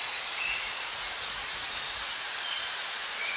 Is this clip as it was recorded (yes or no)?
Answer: no